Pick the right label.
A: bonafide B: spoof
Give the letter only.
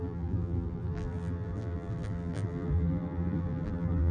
B